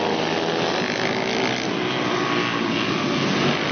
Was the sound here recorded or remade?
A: recorded